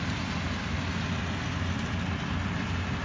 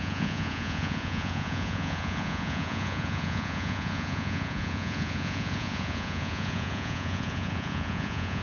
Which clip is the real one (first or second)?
first